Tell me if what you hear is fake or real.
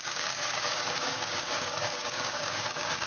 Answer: fake